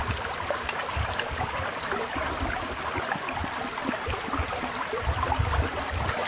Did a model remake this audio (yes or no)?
no